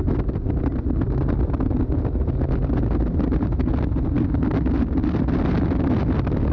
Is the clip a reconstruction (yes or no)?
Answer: no